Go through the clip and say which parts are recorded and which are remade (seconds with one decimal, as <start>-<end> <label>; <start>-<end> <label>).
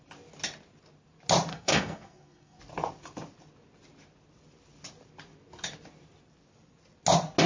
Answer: 0.0-1.5 recorded; 1.5-2.6 remade; 2.6-7.5 recorded